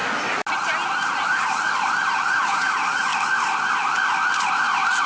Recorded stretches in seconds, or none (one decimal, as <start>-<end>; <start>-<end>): 0.0-0.5; 3.1-4.5